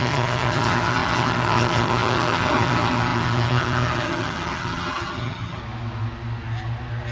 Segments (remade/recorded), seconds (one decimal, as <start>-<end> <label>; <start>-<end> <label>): 0.0-5.6 remade; 5.6-7.1 recorded